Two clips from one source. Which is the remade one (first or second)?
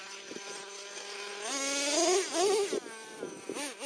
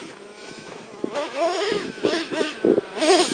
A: second